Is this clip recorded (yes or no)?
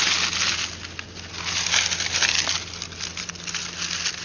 yes